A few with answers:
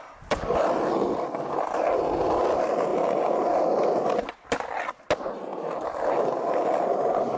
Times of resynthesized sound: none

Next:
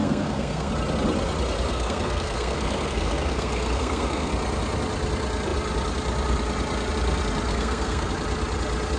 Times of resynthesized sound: 0.0-0.7; 1.7-4.3; 7.5-8.1

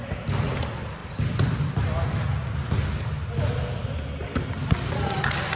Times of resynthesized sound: none

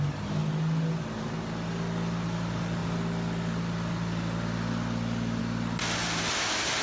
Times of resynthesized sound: none

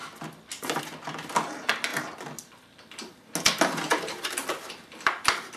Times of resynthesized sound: none

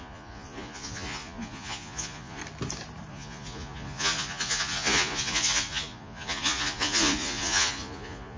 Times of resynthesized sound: 0.0-2.4; 3.1-8.4

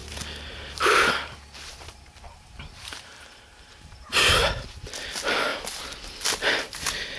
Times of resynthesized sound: 0.0-4.3

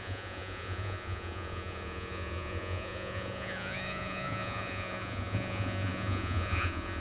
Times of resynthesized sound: 0.0-7.0